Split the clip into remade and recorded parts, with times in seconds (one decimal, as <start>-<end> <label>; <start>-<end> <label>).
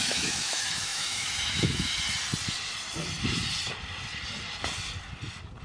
0.0-1.9 remade; 1.9-5.6 recorded